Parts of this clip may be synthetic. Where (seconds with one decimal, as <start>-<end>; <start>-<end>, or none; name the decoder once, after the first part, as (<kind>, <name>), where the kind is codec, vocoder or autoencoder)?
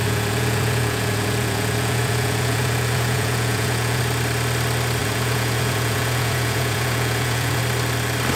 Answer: 0.0-4.0 (vocoder, Vocos); 5.0-7.6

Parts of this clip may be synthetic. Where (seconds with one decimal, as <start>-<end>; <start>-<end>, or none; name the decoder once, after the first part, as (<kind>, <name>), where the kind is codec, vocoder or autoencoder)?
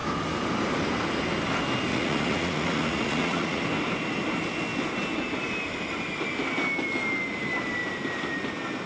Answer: 1.9-3.6 (vocoder, Vocos)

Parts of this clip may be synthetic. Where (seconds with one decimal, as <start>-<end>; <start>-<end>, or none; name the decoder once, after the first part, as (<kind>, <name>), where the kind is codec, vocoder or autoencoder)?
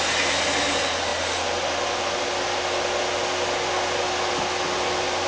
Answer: none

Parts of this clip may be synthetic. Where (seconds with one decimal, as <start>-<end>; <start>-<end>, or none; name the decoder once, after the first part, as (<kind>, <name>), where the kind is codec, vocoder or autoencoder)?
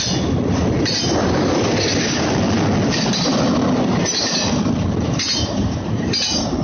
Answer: none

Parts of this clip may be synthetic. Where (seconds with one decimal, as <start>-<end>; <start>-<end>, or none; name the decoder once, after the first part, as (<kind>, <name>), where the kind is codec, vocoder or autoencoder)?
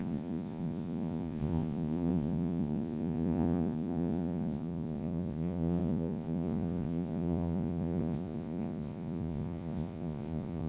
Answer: 0.0-10.7 (vocoder, Vocos)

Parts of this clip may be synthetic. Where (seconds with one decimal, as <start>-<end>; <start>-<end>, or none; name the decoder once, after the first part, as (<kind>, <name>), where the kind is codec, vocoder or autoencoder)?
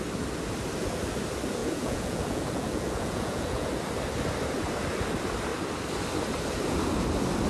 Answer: 1.6-3.7 (vocoder, Vocos)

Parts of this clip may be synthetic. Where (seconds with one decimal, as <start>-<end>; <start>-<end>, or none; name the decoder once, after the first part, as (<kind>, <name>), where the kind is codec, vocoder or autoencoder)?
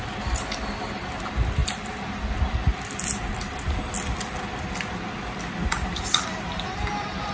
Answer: none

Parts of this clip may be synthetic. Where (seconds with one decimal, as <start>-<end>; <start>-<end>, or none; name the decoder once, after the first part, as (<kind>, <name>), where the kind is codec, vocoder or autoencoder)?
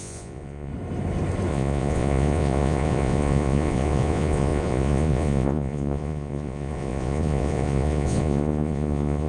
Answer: 0.0-0.7 (vocoder, Vocos); 1.5-9.3